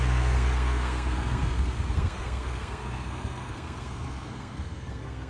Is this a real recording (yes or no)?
no